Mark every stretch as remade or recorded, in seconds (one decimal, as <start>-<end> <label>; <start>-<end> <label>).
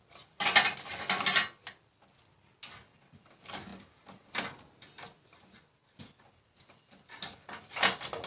0.0-8.3 recorded